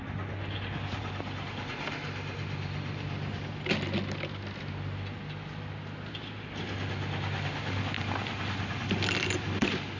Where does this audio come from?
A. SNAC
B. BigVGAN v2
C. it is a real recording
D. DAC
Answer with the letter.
C